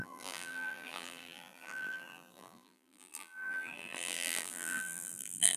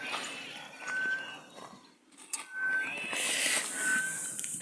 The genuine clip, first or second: second